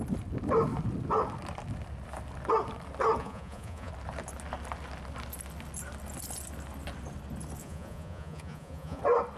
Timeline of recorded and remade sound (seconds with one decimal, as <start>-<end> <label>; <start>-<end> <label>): 0.0-3.2 recorded; 3.2-3.9 remade; 3.9-7.6 recorded; 7.6-9.0 remade; 9.0-9.4 recorded